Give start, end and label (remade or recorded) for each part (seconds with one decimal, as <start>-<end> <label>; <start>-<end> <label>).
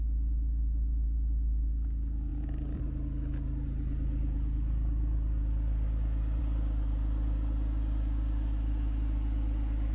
0.0-9.9 recorded